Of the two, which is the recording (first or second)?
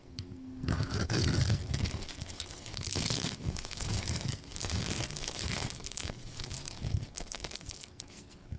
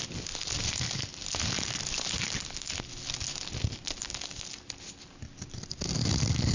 second